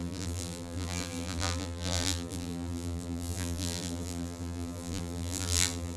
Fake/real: fake